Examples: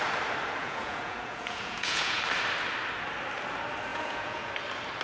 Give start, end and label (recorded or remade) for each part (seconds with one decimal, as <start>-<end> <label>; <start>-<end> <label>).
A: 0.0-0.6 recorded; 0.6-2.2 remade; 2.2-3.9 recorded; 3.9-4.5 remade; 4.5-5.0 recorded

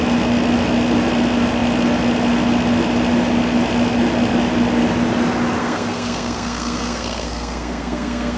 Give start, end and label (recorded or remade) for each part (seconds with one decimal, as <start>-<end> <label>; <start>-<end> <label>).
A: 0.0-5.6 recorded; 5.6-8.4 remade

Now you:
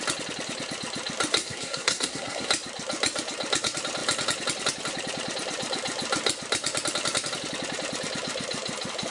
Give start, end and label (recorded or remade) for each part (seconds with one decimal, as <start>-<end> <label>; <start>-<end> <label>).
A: 0.0-1.4 recorded; 1.4-2.5 remade; 2.5-9.1 recorded

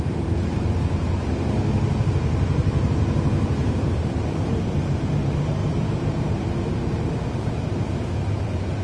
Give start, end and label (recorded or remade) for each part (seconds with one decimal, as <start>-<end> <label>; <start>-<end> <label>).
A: 0.0-1.3 remade; 1.3-2.0 recorded; 2.0-8.8 remade

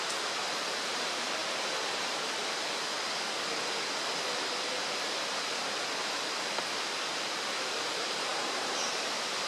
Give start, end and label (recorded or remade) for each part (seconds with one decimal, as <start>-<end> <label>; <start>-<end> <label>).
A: 0.0-1.4 remade; 1.4-2.0 recorded; 2.0-2.4 remade; 2.4-7.1 recorded; 7.1-9.5 remade